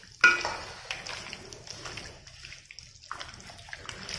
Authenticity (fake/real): real